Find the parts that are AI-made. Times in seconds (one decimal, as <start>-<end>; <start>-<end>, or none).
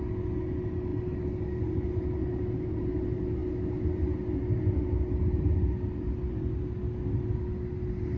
none